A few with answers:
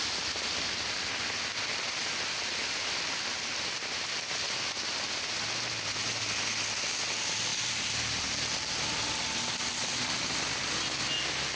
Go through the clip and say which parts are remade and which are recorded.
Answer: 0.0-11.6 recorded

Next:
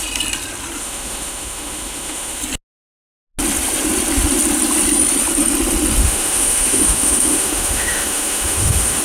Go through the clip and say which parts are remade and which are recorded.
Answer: 0.0-0.8 recorded; 0.8-2.4 remade; 2.4-6.0 recorded; 6.0-9.0 remade

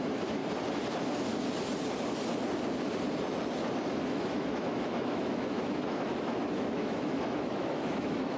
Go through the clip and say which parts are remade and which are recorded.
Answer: 0.0-0.4 remade; 0.4-3.9 recorded; 3.9-8.4 remade

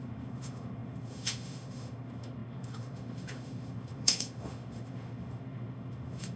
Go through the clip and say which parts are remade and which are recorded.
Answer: 0.0-6.4 remade

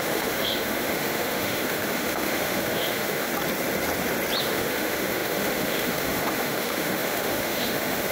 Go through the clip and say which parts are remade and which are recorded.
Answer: 0.0-3.3 remade; 3.3-4.4 recorded; 4.4-8.1 remade

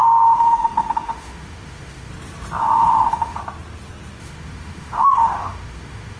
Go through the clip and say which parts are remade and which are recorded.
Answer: 0.0-2.1 remade; 2.1-2.6 recorded; 2.6-3.4 remade; 3.4-4.2 recorded; 4.2-6.2 remade